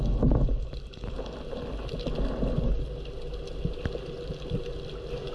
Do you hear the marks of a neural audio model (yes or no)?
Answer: no